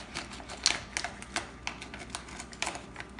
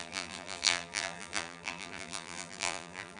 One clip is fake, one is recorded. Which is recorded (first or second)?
first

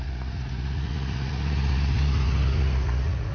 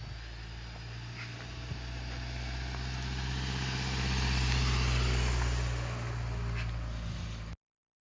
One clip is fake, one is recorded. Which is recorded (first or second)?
second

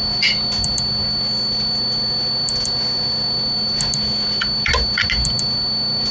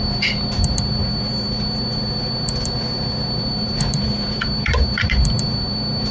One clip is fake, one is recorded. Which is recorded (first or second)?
first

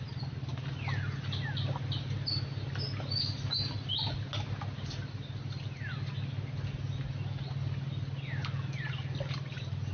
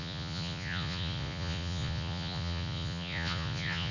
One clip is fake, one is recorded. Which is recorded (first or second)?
first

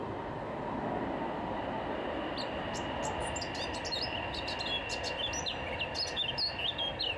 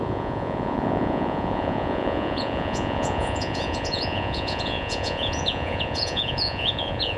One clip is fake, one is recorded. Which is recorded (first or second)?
first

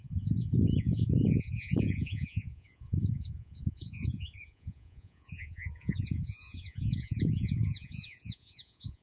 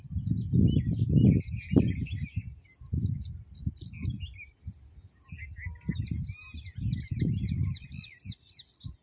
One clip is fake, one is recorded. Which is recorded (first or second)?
second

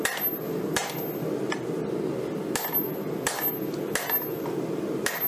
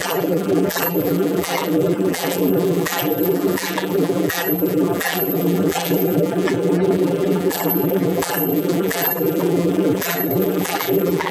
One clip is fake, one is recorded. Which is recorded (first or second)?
first